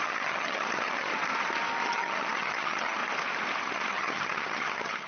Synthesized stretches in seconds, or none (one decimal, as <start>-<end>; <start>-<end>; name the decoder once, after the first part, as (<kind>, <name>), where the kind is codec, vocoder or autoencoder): 0.0-1.1 (vocoder, HiFi-GAN); 1.8-3.0; 3.6-5.1